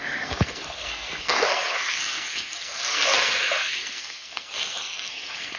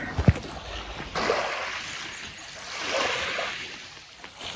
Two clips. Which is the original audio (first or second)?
second